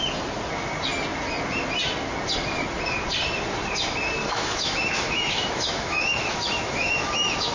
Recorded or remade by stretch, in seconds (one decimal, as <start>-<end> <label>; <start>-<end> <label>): 0.0-4.2 recorded; 4.2-7.5 remade